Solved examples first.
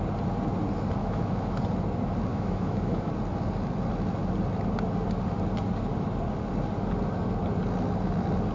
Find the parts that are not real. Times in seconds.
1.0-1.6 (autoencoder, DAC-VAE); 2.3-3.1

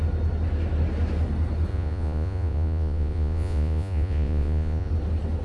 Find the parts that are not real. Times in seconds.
1.7-4.9 (vocoder, Vocos)

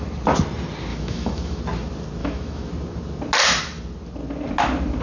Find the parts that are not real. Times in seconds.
0.9-1.6 (autoencoder, DAC-VAE); 2.2-2.7

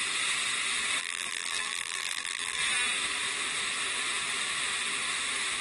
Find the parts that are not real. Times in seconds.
1.0-2.6 (vocoder, BigVGAN v2)